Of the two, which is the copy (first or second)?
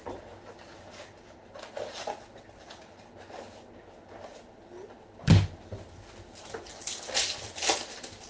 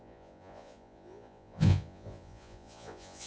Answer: second